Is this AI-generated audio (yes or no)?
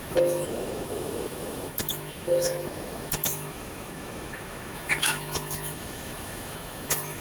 yes